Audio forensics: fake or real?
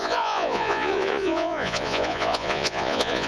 fake